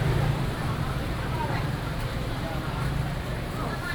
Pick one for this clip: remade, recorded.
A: remade